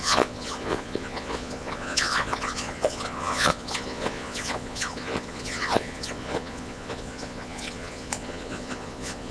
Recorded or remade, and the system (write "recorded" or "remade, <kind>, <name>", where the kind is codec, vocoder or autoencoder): remade, vocoder, Vocos